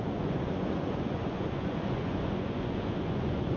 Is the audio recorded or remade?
remade